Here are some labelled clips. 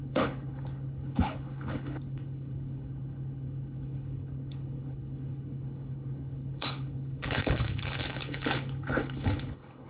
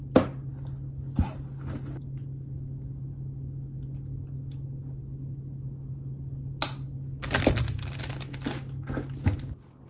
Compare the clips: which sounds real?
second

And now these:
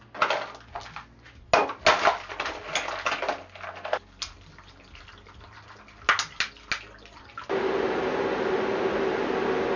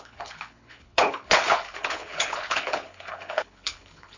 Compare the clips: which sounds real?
first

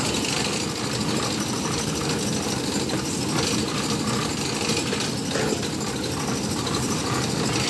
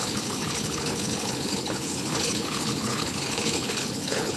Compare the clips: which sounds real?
first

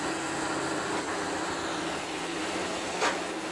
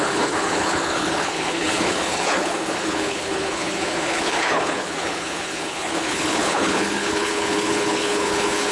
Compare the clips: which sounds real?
first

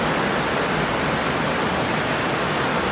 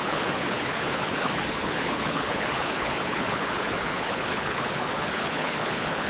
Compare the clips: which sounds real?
first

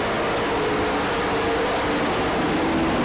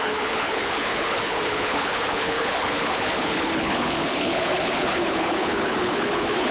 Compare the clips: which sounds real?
first